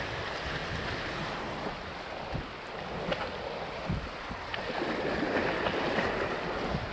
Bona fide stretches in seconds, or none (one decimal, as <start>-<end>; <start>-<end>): 0.0-6.9